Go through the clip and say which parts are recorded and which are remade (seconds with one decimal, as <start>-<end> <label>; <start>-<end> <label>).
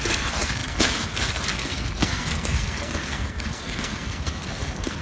0.0-5.0 remade